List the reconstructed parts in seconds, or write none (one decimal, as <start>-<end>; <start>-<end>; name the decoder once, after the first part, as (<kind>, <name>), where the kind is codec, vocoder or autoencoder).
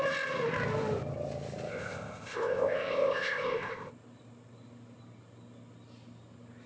1.7-3.9 (codec, ZipCodec)